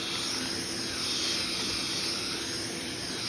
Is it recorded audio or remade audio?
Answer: recorded